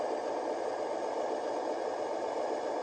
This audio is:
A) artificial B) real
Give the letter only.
B